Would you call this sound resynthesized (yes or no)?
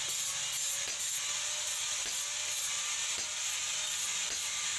no